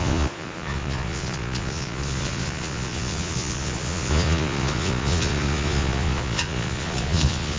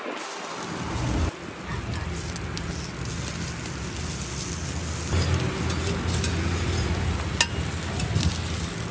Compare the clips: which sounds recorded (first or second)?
second